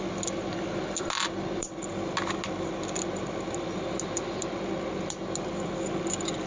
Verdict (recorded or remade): recorded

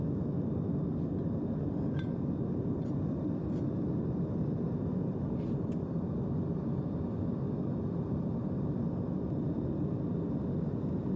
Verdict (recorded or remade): remade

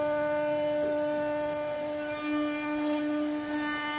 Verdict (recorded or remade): recorded